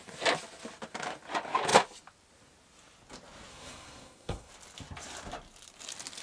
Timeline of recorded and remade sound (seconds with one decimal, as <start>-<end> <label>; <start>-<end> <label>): 0.0-3.5 recorded; 3.5-4.5 remade; 4.5-6.2 recorded